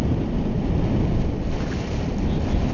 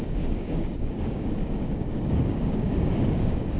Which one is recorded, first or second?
first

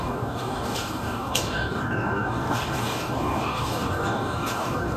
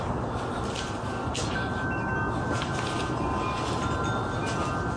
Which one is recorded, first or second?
second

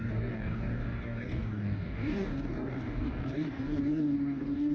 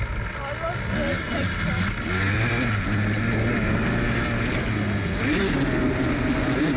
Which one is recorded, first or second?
second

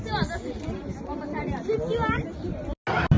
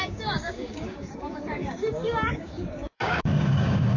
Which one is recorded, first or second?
first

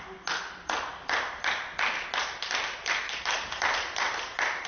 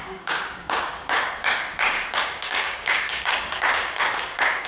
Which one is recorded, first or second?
first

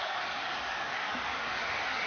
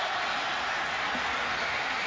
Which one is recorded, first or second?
second